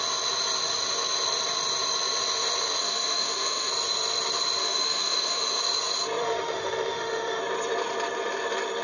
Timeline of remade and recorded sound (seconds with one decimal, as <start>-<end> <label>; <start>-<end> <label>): 0.0-2.8 recorded; 2.8-3.7 remade; 3.7-4.6 recorded; 4.6-5.6 remade; 5.6-6.2 recorded; 6.2-7.4 remade; 7.4-8.8 recorded